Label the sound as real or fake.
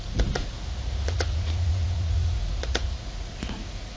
fake